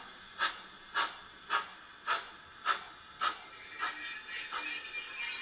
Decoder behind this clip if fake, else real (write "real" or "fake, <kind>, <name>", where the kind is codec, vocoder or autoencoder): real